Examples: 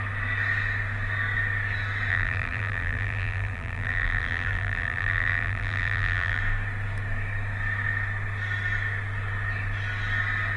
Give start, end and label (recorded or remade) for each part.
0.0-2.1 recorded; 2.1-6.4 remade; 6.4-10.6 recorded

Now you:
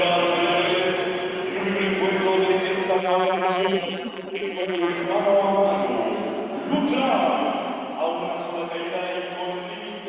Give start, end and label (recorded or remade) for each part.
0.0-3.0 recorded; 3.0-4.9 remade; 4.9-10.1 recorded